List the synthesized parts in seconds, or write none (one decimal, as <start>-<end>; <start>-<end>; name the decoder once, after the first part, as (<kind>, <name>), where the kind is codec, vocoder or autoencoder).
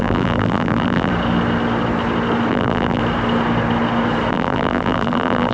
0.0-1.1 (vocoder, BigVGAN v2); 2.5-3.0; 4.3-5.5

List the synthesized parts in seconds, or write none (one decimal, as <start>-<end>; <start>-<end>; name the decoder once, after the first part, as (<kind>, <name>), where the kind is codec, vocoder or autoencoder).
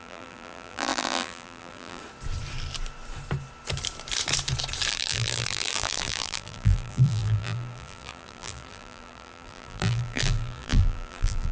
0.0-2.0 (vocoder, BigVGAN v2); 4.9-11.5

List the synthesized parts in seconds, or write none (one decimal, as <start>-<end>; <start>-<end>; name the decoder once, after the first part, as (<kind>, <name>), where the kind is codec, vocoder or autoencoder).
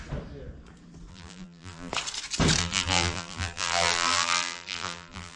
1.1-1.9 (vocoder, BigVGAN v2); 2.6-5.4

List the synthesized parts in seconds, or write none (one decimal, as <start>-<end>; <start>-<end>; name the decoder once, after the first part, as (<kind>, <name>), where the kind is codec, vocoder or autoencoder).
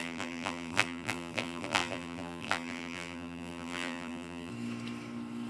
0.0-4.5 (vocoder, BigVGAN v2)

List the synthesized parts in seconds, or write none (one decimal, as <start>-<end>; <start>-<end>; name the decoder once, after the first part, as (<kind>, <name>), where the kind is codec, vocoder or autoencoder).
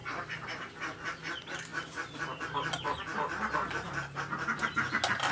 0.0-0.6 (vocoder, BigVGAN v2); 1.7-2.4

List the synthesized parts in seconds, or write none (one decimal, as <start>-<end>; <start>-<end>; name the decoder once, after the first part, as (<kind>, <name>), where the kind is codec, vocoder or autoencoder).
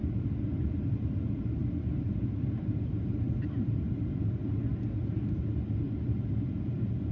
0.0-4.3 (vocoder, BigVGAN v2)